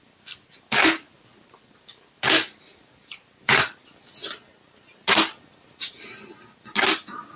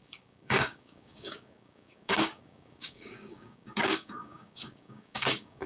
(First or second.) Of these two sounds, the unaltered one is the first